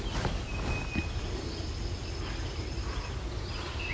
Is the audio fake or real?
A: real